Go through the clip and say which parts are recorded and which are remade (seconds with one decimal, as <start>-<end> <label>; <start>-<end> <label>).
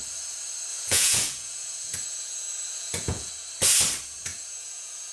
0.0-0.7 recorded; 0.7-3.3 remade; 3.3-4.3 recorded; 4.3-5.1 remade